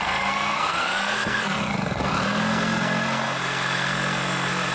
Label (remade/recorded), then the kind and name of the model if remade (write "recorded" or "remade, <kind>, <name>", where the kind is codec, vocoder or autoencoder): remade, codec, SNAC